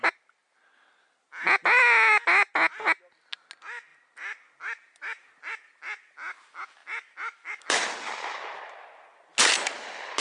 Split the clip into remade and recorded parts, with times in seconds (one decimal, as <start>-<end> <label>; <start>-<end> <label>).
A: 0.0-10.2 recorded

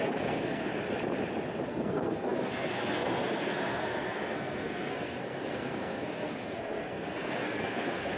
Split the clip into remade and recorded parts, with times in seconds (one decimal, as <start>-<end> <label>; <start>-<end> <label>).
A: 0.0-0.7 remade; 0.7-1.7 recorded; 1.7-8.2 remade

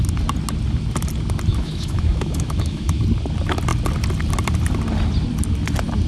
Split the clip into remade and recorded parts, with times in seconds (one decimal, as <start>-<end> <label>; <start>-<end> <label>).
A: 0.0-1.5 recorded; 1.5-3.0 remade; 3.0-6.1 recorded

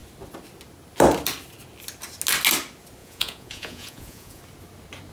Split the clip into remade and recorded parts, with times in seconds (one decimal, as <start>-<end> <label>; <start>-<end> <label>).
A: 0.0-3.0 recorded; 3.0-4.4 remade; 4.4-5.1 recorded

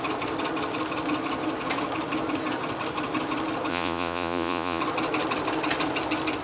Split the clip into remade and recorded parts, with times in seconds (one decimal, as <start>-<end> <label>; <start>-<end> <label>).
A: 0.0-3.7 recorded; 3.7-4.8 remade; 4.8-6.4 recorded